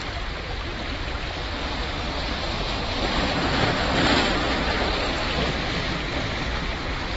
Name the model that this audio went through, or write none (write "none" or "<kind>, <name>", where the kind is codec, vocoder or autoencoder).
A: none